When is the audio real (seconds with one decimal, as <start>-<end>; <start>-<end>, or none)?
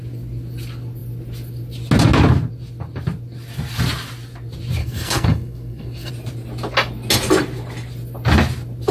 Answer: 0.0-4.8; 6.1-8.9